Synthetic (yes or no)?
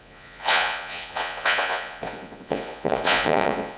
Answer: yes